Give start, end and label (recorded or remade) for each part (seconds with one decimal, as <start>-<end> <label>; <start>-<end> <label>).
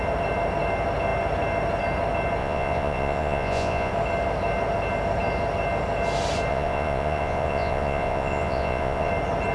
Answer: 0.0-2.4 recorded; 2.4-3.9 remade; 3.9-6.5 recorded; 6.5-9.1 remade; 9.1-9.5 recorded